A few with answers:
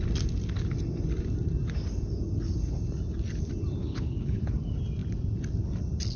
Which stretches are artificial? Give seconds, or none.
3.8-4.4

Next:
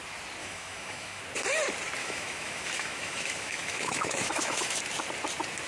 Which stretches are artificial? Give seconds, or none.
0.4-1.2; 2.0-4.8

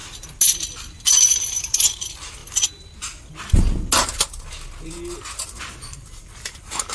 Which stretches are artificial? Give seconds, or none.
1.1-2.4; 5.6-6.9

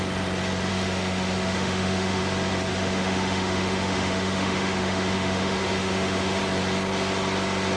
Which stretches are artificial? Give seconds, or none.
0.7-2.2; 2.7-6.4

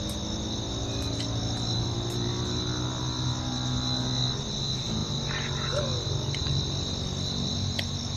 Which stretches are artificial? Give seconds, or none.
none